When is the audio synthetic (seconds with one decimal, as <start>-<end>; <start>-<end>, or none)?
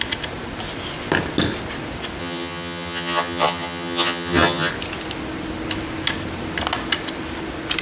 2.2-4.7